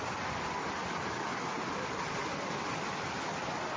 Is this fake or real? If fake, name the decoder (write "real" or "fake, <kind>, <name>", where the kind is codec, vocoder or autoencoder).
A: real